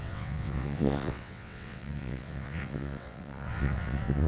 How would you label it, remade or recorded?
remade